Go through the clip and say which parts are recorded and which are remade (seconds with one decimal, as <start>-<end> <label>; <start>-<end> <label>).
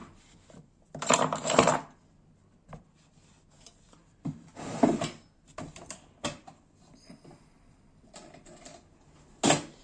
0.0-8.7 remade; 8.7-9.8 recorded